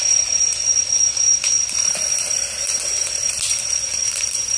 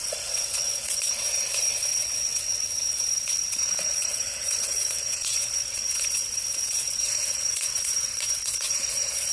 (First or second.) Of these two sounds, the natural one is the first